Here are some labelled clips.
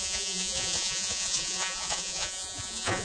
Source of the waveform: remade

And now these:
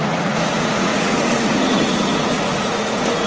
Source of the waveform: remade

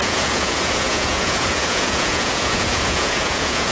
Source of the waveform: remade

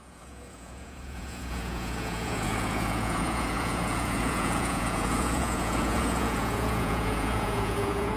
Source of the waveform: remade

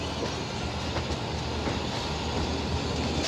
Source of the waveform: recorded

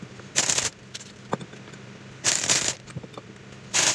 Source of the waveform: recorded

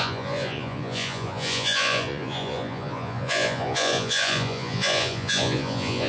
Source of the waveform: remade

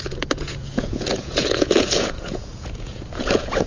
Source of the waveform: remade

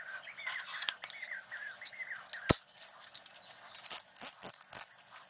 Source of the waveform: recorded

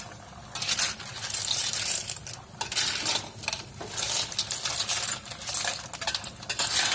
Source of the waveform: recorded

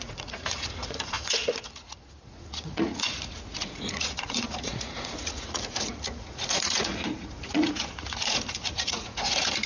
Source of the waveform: remade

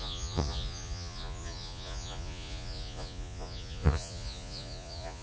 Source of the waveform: remade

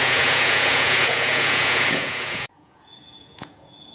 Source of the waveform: remade